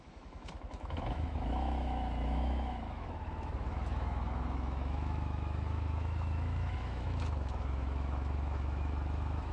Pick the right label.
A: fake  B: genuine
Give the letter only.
A